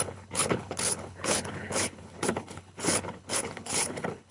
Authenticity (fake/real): fake